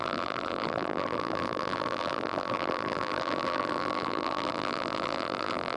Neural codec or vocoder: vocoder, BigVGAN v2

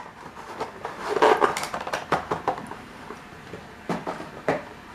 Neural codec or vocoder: vocoder, BigVGAN v2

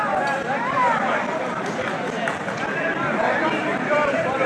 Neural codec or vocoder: vocoder, BigVGAN v2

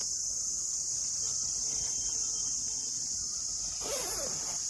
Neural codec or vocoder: none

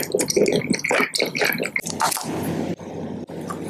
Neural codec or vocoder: none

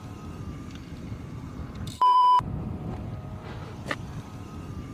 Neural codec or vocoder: vocoder, BigVGAN v2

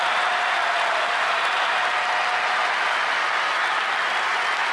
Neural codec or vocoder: none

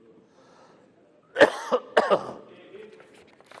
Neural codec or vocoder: none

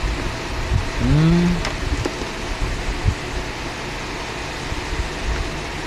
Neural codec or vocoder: none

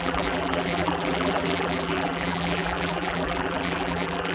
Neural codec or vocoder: vocoder, BigVGAN v2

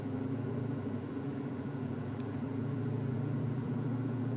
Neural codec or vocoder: vocoder, BigVGAN v2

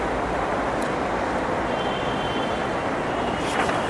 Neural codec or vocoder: none